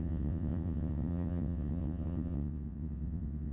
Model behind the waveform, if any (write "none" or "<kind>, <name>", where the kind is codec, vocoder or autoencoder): vocoder, WaveNeXt